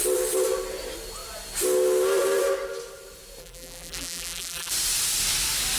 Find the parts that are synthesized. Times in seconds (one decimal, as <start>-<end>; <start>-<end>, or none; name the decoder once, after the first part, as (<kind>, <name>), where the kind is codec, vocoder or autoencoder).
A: 3.4-4.7 (vocoder, BigVGAN v2)